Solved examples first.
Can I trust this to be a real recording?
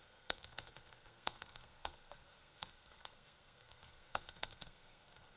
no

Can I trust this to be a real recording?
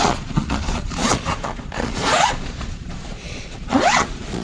no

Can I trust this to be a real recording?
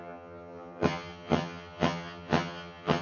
no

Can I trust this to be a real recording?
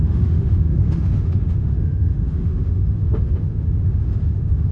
no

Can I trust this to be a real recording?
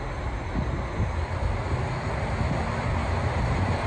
yes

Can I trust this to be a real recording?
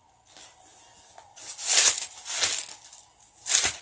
yes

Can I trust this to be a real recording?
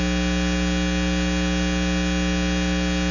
yes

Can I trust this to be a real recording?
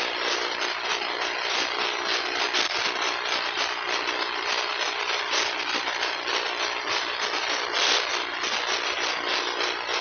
yes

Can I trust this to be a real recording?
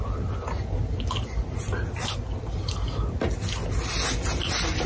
yes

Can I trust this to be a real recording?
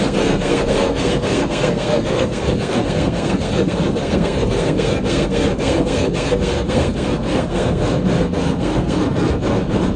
no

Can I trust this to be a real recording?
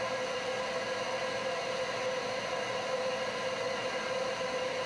yes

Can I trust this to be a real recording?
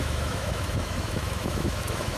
no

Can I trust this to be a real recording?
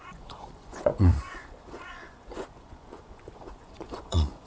no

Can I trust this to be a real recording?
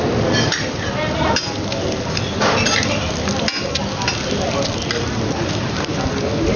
yes